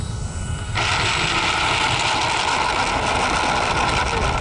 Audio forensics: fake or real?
real